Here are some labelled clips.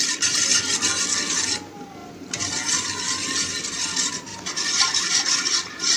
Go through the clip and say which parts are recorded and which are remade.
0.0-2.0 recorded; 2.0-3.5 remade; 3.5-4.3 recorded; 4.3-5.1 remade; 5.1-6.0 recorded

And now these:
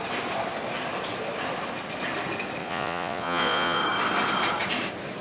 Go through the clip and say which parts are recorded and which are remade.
0.0-2.6 recorded; 2.6-3.8 remade; 3.8-5.2 recorded

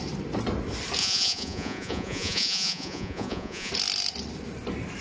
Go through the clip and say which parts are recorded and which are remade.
0.0-1.0 recorded; 1.0-3.7 remade; 3.7-5.0 recorded

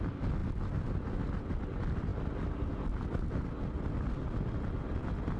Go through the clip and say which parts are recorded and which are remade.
0.0-5.4 recorded

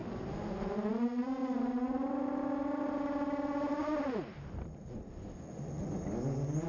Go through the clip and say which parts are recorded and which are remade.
0.0-6.7 recorded

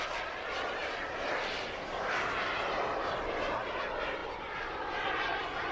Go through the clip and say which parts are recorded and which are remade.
0.0-5.7 recorded

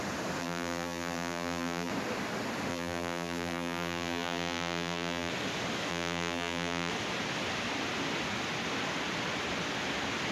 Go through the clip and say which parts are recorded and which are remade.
0.0-0.4 recorded; 0.4-1.9 remade; 1.9-2.7 recorded; 2.7-5.3 remade; 5.3-5.9 recorded; 5.9-6.9 remade; 6.9-10.3 recorded